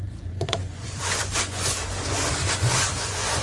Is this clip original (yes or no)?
no